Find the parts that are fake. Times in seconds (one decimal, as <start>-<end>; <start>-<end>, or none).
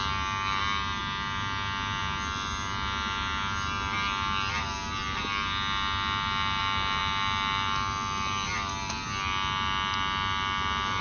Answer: none